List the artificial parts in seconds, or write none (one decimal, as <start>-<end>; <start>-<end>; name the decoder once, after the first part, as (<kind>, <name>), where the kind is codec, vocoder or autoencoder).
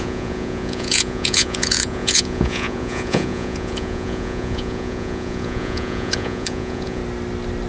0.0-7.0 (vocoder, Vocos)